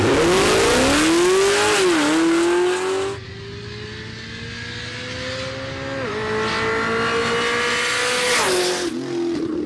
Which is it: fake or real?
real